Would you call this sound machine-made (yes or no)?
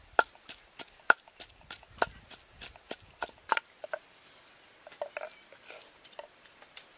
no